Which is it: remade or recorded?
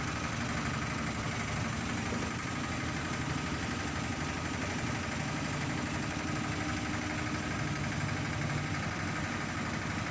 recorded